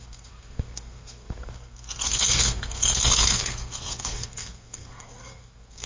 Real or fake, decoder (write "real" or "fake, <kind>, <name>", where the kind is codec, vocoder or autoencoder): fake, codec, SNAC